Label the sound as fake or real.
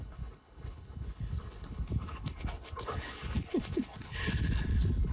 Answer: fake